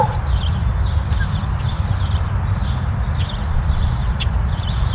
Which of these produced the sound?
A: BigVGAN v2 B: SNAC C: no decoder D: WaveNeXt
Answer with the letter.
C